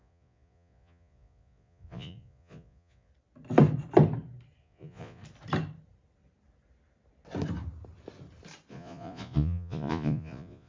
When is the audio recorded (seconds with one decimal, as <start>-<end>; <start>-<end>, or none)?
3.1-4.6; 5.2-8.7